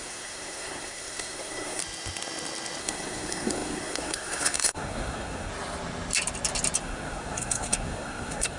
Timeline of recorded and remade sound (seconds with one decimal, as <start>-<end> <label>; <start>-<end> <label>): 0.0-1.8 remade; 1.8-2.8 recorded; 2.8-5.5 remade; 5.5-6.8 recorded; 6.8-8.6 remade